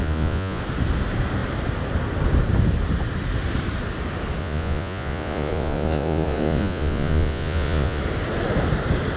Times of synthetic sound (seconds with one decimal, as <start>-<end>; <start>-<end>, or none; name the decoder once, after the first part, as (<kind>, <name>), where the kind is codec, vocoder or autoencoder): 0.0-0.6 (vocoder, Vocos); 4.4-8.0